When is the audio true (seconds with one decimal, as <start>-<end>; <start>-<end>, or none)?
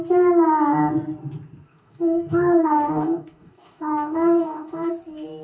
0.0-1.7; 4.9-5.4